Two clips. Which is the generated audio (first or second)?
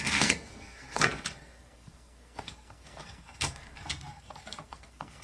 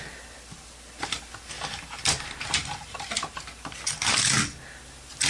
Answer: first